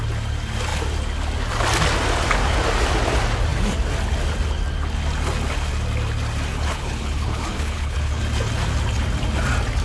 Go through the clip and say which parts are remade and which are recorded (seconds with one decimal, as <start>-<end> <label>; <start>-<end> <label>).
0.0-6.5 recorded; 6.5-8.2 remade; 8.2-9.8 recorded